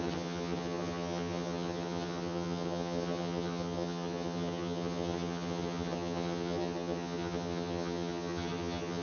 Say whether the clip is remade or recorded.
remade